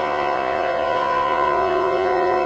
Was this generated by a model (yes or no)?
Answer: yes